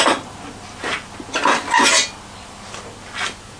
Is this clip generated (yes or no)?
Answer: no